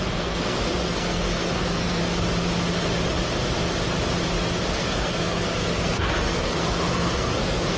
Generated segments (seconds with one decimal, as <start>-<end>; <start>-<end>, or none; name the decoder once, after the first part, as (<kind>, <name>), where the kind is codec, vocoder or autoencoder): 0.0-2.0 (codec, SNAC); 4.7-7.8